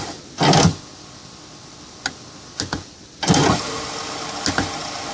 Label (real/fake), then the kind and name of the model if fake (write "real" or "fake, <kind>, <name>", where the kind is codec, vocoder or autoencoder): real